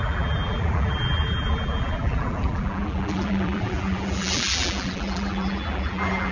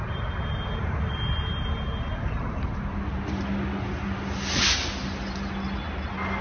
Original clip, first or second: second